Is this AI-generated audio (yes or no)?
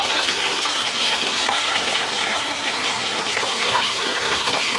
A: yes